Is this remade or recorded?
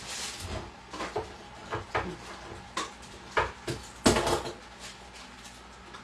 recorded